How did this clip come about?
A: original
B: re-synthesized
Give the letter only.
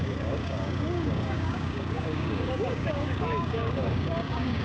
B